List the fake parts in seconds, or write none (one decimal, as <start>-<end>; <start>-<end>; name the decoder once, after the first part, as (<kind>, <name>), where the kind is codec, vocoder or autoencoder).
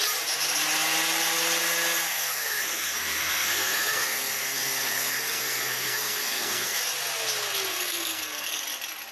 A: 2.1-6.8 (codec, SNAC); 7.7-8.6